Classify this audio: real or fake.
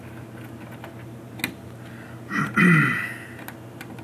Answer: real